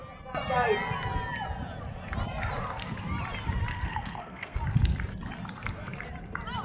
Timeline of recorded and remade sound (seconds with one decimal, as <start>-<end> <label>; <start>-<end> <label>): 0.0-3.7 recorded; 3.7-4.6 remade; 4.6-6.6 recorded